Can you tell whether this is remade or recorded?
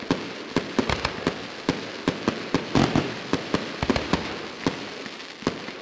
recorded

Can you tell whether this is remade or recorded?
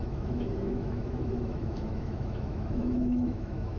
remade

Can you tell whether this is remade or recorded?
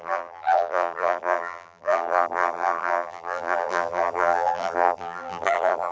remade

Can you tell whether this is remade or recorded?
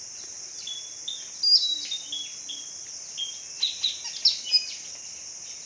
recorded